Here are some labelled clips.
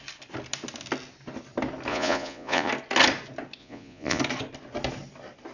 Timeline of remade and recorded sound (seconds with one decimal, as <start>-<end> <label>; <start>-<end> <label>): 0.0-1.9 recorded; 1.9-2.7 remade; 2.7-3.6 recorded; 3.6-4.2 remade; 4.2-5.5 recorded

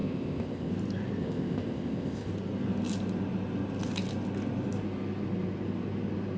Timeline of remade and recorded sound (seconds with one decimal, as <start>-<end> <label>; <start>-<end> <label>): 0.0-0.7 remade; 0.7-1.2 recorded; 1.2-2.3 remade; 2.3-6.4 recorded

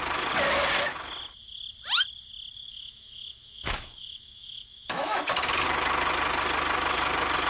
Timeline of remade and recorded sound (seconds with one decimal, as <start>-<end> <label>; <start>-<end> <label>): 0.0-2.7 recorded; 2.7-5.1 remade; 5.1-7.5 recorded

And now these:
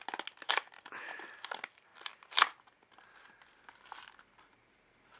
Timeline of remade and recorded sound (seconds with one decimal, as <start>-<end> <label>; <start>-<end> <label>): 0.0-5.2 recorded